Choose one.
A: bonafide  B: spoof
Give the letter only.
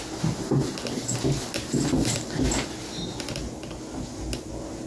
A